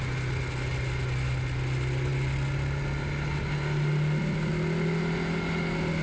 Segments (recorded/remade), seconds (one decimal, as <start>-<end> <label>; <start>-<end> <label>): 0.0-6.0 recorded